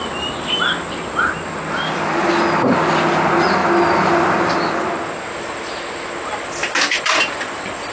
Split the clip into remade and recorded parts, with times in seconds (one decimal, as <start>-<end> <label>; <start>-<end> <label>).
0.0-7.9 recorded